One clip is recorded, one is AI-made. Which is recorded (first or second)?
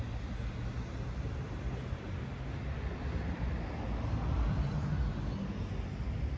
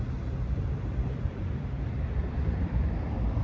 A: first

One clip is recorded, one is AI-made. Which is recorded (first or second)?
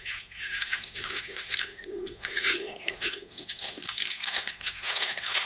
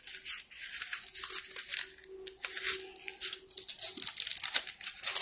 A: second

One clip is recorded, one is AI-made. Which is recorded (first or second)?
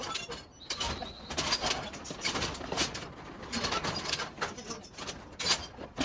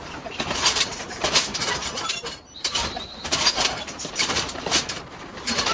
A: first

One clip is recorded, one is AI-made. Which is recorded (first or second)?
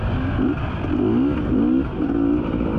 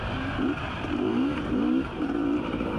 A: first